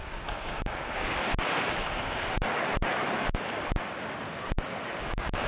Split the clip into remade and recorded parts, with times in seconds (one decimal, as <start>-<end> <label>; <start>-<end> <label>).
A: 0.0-1.2 remade; 1.2-1.7 recorded; 1.7-2.3 remade; 2.3-5.0 recorded; 5.0-5.5 remade